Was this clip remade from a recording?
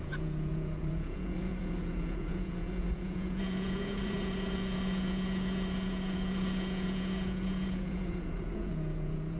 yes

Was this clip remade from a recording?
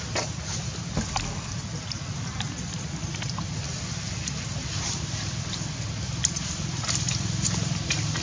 no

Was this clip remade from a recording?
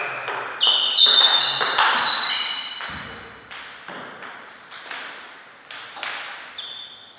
no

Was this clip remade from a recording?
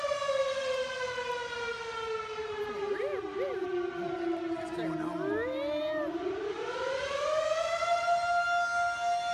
no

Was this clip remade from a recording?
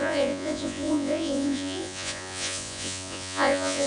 yes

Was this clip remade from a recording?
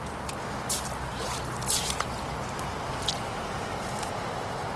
no